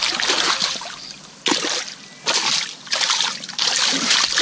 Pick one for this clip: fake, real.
real